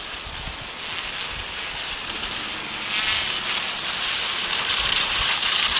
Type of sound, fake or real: real